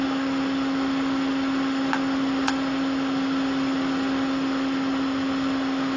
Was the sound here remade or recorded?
recorded